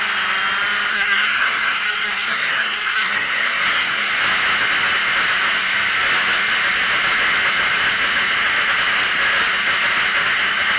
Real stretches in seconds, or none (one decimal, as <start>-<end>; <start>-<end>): 0.0-0.9; 4.1-10.8